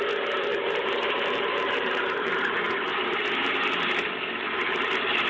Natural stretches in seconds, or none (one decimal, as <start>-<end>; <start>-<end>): 0.0-0.5; 2.3-5.3